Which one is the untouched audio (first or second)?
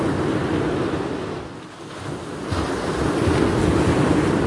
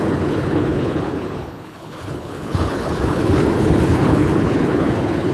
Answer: first